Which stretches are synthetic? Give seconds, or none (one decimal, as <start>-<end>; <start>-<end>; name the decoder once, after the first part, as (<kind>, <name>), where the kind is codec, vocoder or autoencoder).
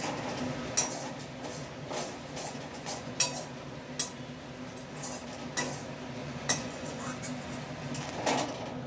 2.4-3.1 (vocoder, Vocos); 6.2-7.0